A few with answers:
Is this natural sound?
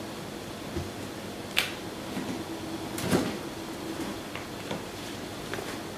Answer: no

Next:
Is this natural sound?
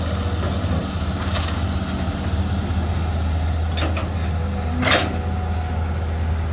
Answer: yes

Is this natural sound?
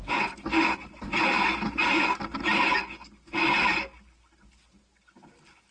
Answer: yes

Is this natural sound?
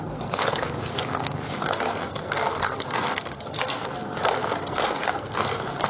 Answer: no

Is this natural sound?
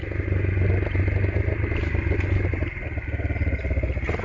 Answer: yes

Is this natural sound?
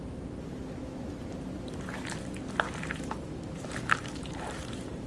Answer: yes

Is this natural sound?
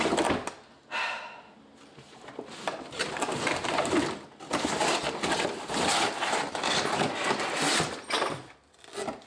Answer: yes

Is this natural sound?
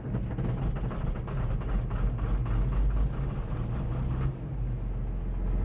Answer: yes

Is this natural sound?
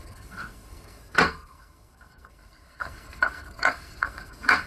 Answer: no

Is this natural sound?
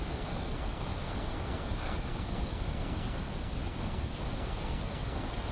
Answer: no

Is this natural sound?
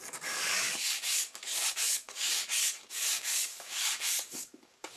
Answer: no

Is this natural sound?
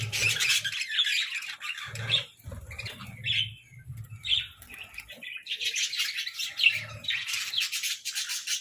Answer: yes